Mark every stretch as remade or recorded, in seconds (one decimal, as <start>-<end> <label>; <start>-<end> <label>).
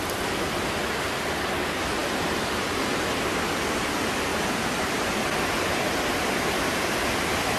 0.0-7.6 recorded